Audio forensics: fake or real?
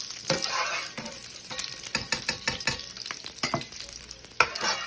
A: real